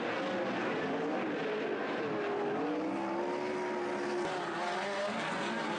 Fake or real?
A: real